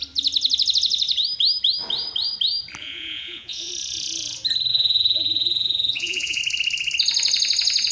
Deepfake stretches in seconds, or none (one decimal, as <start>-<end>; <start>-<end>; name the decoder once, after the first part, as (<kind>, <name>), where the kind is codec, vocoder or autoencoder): 2.8-3.7 (vocoder, Vocos); 4.7-6.4